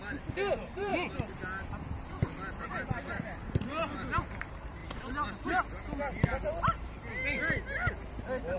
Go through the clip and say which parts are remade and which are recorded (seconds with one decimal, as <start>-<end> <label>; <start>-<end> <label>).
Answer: 0.0-0.9 remade; 0.9-2.5 recorded; 2.5-4.8 remade; 4.8-6.6 recorded; 6.6-7.1 remade; 7.1-8.6 recorded